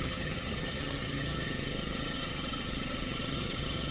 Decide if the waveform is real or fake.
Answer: fake